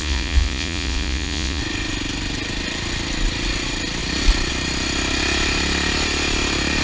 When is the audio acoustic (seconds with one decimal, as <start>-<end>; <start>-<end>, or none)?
1.6-6.8

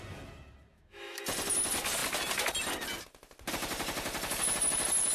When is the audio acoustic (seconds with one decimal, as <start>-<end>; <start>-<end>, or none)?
0.0-0.7; 1.2-5.1

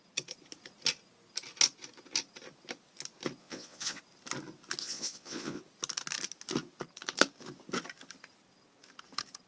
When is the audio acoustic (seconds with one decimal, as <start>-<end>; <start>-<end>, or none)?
0.0-3.4; 4.0-4.8; 5.6-9.5

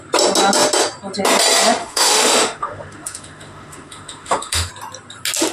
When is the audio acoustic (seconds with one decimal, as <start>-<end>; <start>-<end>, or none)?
0.0-1.8; 4.7-5.5

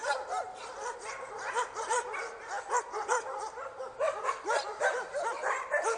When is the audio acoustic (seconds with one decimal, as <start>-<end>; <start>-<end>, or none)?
0.0-6.0

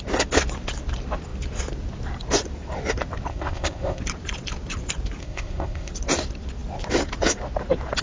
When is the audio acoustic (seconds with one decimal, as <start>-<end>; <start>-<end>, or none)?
0.0-3.3; 4.0-5.2; 5.9-8.0

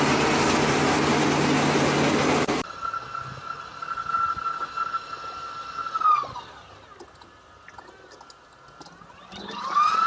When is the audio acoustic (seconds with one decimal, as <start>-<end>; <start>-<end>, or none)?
0.0-10.1